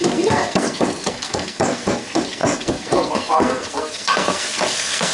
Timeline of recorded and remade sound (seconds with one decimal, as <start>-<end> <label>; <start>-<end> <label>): 0.0-5.1 remade

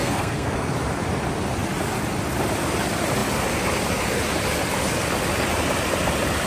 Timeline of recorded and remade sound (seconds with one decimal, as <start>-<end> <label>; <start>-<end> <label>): 0.0-0.7 remade; 0.7-6.5 recorded

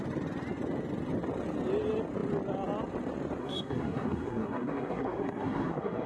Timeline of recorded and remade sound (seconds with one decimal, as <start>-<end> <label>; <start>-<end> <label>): 0.0-3.4 recorded; 3.4-6.1 remade

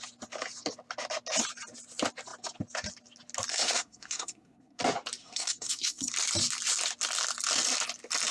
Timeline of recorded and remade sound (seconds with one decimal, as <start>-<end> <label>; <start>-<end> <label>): 0.0-3.5 recorded; 3.5-4.8 remade; 4.8-5.2 recorded; 5.2-6.1 remade; 6.1-8.3 recorded

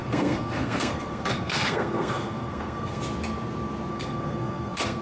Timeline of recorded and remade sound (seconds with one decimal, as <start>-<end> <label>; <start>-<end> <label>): 0.0-3.0 remade; 3.0-3.9 recorded; 3.9-5.0 remade